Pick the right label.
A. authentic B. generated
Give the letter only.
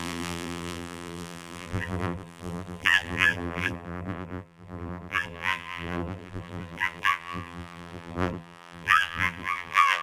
B